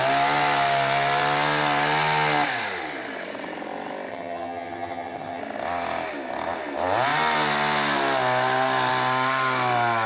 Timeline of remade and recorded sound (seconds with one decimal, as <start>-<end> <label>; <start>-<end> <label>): 0.0-4.1 recorded; 4.1-5.4 remade; 5.4-10.1 recorded

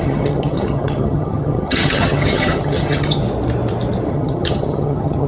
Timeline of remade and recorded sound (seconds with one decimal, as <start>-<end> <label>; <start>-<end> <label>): 0.0-3.2 remade; 3.2-4.1 recorded; 4.1-5.3 remade

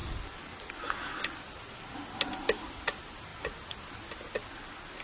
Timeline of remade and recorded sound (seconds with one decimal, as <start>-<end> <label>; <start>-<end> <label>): 0.0-5.0 recorded

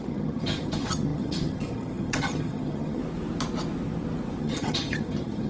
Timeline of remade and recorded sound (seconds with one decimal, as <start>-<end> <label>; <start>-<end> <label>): 0.0-3.0 remade; 3.0-4.4 recorded; 4.4-5.5 remade

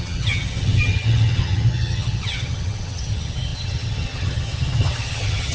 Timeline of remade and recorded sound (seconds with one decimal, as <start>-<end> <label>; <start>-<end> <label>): 0.0-5.5 remade

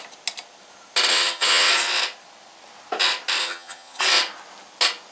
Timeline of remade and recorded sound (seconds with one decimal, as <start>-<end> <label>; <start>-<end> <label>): 0.0-1.1 recorded; 1.1-1.7 remade; 1.7-3.4 recorded; 3.4-4.0 remade; 4.0-5.1 recorded

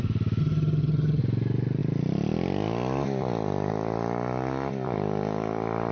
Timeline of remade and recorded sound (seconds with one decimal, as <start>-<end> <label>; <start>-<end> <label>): 0.0-0.4 recorded; 0.4-1.2 remade; 1.2-5.9 recorded

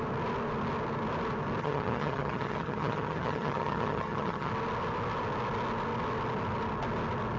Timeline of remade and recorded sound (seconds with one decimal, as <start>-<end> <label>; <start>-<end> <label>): 0.0-1.6 recorded; 1.6-4.5 remade; 4.5-7.4 recorded